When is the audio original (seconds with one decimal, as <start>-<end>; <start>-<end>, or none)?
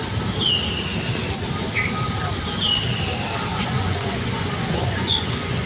0.0-3.5